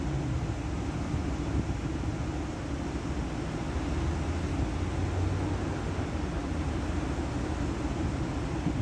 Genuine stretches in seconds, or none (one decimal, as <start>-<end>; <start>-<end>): 0.0-8.8